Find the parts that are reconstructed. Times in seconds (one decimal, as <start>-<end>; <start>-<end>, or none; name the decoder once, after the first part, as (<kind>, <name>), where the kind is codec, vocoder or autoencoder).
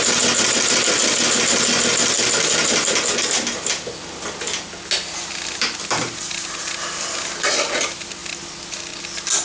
none